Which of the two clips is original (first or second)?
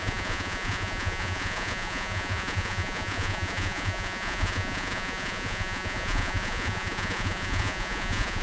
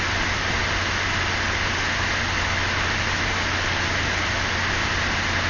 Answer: second